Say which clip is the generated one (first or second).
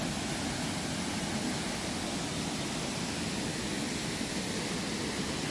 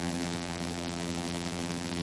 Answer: second